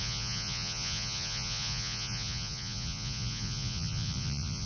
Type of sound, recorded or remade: remade